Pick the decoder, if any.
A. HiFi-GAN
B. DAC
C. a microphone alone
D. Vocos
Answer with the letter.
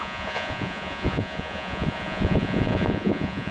D